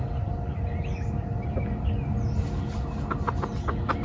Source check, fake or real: real